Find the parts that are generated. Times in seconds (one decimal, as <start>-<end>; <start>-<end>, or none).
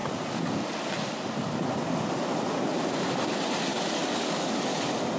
3.7-4.6